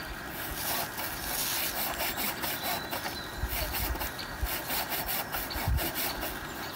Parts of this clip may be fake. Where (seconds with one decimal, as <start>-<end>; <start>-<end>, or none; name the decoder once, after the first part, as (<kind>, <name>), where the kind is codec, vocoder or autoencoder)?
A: none